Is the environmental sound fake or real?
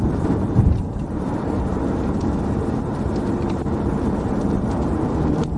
fake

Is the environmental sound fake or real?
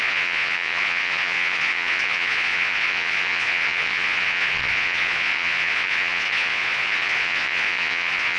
fake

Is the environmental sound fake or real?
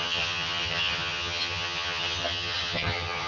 fake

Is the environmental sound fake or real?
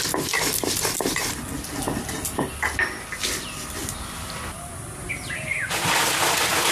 real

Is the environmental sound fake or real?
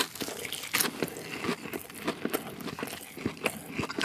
real